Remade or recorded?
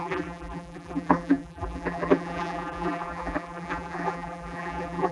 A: remade